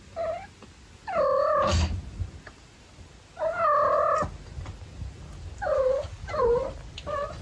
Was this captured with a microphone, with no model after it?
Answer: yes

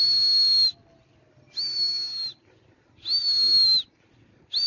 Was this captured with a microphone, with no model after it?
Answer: yes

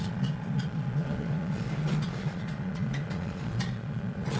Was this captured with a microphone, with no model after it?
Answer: no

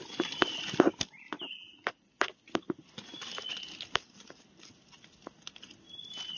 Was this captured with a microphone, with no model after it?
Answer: yes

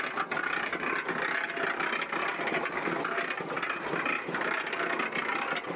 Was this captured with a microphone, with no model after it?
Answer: yes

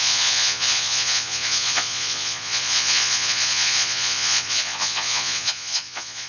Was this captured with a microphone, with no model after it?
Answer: no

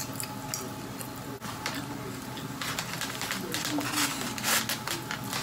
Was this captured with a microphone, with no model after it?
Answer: yes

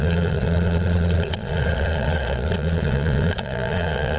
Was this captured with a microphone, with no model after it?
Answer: no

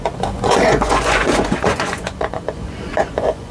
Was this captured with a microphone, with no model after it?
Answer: no